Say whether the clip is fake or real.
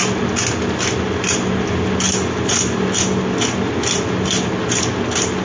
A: real